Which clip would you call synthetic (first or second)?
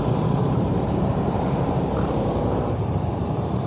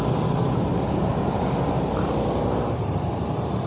first